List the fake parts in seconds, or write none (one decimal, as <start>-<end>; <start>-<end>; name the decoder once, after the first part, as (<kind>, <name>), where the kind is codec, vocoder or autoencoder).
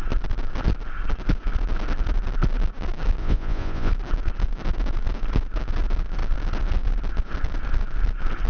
3.2-3.9 (vocoder, Vocos)